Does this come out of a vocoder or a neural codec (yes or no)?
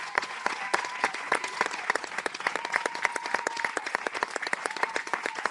yes